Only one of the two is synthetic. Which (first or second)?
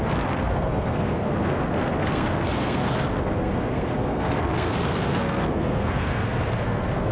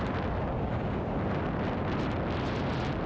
first